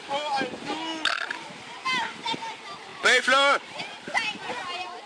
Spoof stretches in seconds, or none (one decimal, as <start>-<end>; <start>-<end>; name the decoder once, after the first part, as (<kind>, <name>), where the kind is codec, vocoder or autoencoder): none